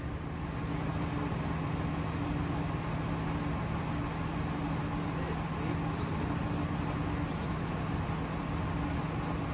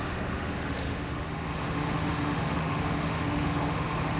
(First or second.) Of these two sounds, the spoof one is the second